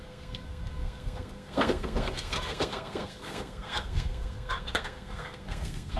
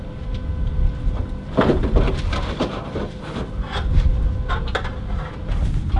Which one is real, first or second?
second